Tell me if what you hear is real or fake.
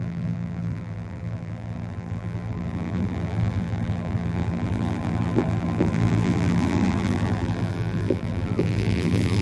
fake